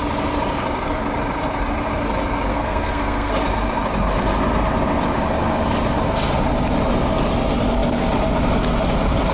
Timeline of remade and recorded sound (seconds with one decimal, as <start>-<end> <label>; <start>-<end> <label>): 0.0-2.5 recorded; 2.5-3.3 remade; 3.3-9.3 recorded